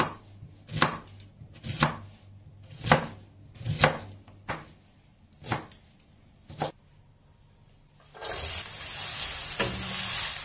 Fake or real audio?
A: real